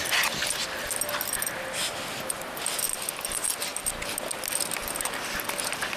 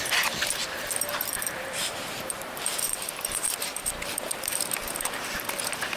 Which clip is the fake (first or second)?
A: second